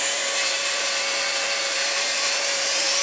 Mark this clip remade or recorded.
remade